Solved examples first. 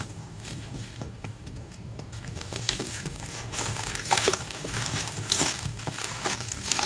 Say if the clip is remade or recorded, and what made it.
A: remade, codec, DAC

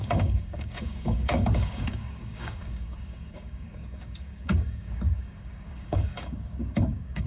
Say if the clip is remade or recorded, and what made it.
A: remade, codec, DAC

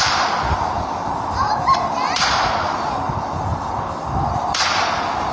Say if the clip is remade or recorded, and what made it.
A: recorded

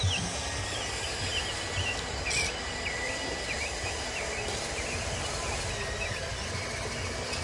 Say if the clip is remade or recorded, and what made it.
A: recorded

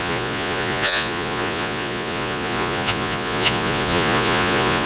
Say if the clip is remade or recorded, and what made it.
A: remade, vocoder, Vocos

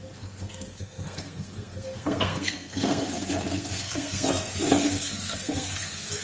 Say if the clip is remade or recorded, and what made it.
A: remade, codec, SNAC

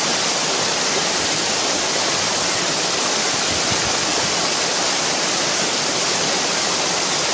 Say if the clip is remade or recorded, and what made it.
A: recorded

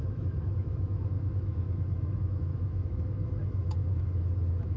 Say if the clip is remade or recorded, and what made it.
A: remade, autoencoder, DAC-VAE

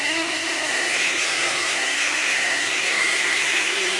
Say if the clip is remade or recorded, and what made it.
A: remade, codec, SNAC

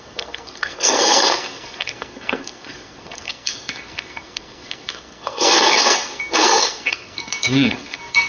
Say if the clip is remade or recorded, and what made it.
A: remade, codec, SNAC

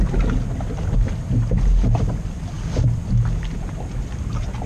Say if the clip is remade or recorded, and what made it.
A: recorded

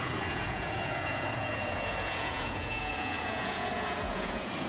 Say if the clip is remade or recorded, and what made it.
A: remade, vocoder, Vocos